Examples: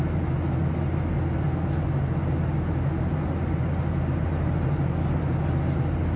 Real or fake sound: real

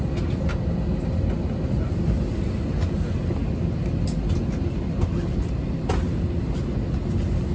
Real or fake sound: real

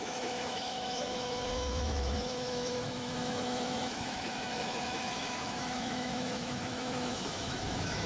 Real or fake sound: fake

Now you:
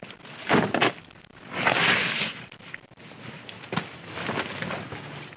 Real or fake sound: real